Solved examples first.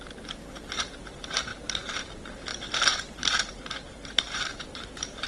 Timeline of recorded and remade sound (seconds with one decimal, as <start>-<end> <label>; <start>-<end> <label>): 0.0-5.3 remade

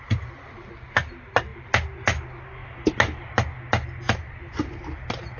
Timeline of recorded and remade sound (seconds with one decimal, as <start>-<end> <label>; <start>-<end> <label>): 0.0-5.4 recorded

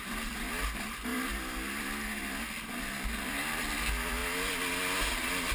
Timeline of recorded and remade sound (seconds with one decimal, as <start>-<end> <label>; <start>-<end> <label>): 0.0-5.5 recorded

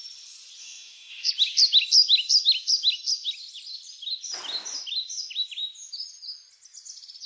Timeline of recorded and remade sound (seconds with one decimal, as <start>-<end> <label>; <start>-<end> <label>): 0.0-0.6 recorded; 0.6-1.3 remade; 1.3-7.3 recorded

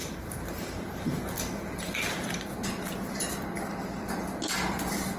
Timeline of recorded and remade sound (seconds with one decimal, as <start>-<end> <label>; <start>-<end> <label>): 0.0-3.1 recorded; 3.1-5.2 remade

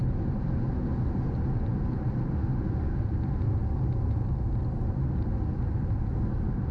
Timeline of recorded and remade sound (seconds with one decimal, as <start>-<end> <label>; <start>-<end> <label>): 0.0-6.7 recorded

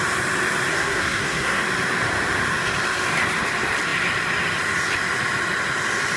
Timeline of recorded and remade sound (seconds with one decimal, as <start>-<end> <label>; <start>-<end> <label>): 0.0-0.7 recorded; 0.7-1.6 remade; 1.6-6.2 recorded